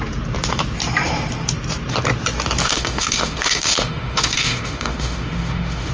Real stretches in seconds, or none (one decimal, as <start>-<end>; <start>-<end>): 0.0-2.6